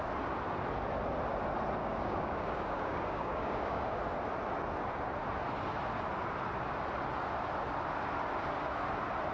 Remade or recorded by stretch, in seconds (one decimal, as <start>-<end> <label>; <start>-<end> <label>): 0.0-1.8 recorded; 1.8-4.0 remade; 4.0-9.3 recorded